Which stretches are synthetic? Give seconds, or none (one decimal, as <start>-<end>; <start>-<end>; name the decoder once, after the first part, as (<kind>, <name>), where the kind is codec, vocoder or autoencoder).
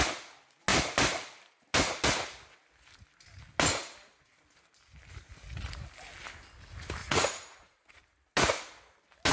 7.0-8.0 (vocoder, Vocos)